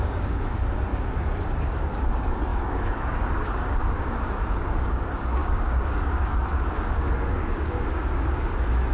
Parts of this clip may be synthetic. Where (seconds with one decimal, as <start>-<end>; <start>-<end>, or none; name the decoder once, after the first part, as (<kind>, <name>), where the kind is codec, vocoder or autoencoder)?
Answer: 0.0-8.9 (codec, DAC)